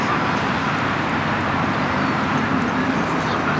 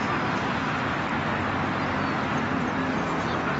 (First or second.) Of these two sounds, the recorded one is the second